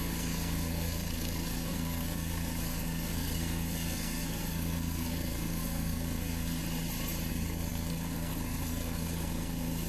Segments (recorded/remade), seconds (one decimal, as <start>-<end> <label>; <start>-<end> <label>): 0.0-6.6 remade; 6.6-7.3 recorded; 7.3-9.9 remade